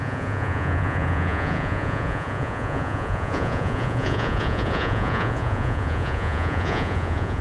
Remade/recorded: remade